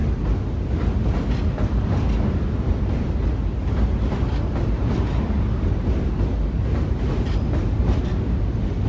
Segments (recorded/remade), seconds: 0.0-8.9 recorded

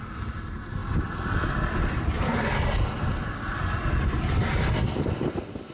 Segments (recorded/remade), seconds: 0.0-5.7 recorded

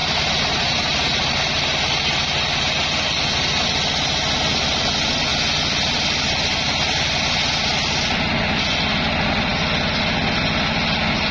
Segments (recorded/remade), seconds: 0.0-1.6 remade; 1.6-11.3 recorded

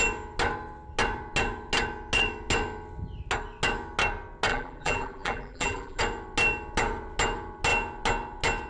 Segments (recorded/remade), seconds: 0.0-4.5 recorded; 4.5-6.0 remade; 6.0-8.7 recorded

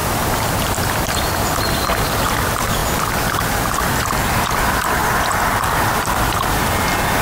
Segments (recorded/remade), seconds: 0.0-1.0 remade; 1.0-2.8 recorded; 2.8-3.4 remade; 3.4-7.2 recorded